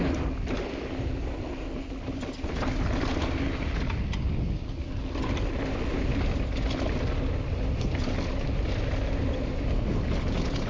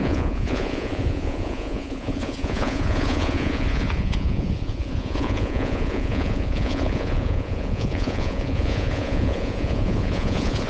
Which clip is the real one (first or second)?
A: first